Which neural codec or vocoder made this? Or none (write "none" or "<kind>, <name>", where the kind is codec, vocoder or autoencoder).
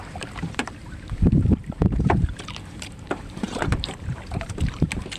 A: vocoder, BigVGAN v2